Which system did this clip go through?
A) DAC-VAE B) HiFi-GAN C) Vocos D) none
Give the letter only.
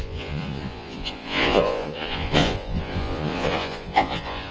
C